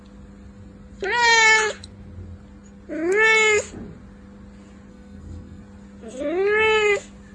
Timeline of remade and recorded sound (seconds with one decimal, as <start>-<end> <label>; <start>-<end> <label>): 0.0-4.9 recorded; 4.9-5.6 remade; 5.6-7.3 recorded